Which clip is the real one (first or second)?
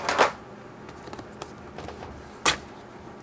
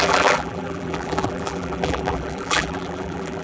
first